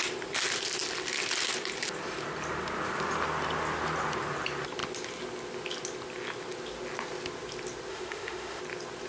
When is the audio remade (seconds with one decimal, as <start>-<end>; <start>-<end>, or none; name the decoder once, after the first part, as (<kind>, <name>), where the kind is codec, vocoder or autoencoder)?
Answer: 7.9-8.6 (autoencoder, DAC-VAE)

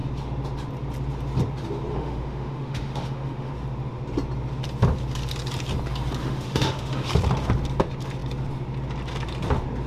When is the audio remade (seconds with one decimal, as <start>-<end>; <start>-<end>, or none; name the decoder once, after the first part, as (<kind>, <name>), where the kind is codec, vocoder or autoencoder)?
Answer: 1.9-3.5 (autoencoder, DAC-VAE); 6.2-7.1

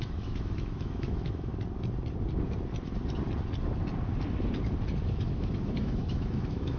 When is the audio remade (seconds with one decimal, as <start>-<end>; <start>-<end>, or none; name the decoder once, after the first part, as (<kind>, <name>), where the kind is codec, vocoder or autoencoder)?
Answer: 0.0-1.5 (autoencoder, DAC-VAE); 5.1-6.8

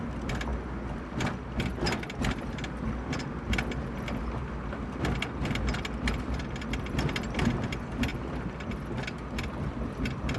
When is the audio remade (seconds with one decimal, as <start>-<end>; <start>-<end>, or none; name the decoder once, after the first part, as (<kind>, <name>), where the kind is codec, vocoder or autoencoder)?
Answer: none